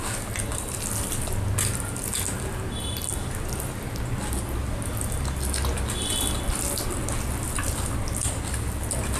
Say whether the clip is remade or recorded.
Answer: recorded